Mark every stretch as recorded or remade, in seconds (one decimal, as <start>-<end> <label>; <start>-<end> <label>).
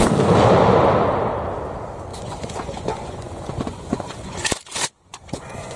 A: 0.0-2.1 recorded; 2.1-5.8 remade